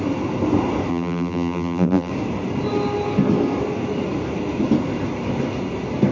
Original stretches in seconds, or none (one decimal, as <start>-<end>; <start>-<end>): 0.0-0.9; 2.1-6.1